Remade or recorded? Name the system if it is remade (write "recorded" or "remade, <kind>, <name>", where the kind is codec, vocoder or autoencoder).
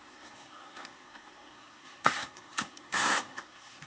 remade, codec, SNAC